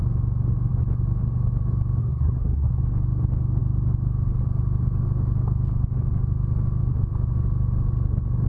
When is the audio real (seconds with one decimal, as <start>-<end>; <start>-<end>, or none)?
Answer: 0.0-2.0; 2.8-8.5